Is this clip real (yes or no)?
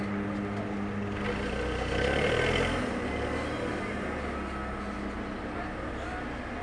yes